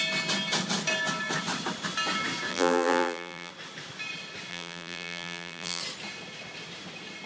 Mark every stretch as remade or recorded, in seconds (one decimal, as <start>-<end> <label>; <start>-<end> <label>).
0.0-2.5 recorded; 2.5-3.5 remade; 3.5-4.5 recorded; 4.5-5.8 remade; 5.8-7.3 recorded